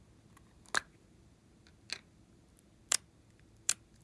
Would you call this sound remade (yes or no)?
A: no